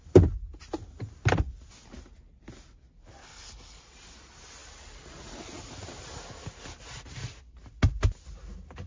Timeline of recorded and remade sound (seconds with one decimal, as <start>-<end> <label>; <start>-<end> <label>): 0.0-3.2 recorded; 3.2-3.8 remade; 3.8-8.9 recorded